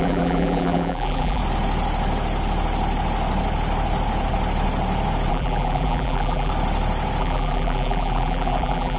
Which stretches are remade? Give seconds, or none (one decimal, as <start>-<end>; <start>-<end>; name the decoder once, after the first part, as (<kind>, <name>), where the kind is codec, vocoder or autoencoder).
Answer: 0.0-1.4 (vocoder, BigVGAN v2); 5.3-6.5; 7.2-9.0